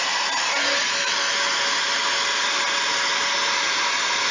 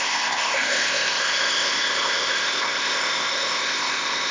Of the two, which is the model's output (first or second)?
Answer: second